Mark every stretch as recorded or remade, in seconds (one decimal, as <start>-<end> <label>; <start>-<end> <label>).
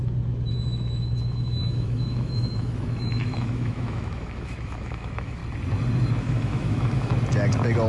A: 0.0-0.5 recorded; 0.5-5.4 remade; 5.4-6.2 recorded; 6.2-7.1 remade; 7.1-7.9 recorded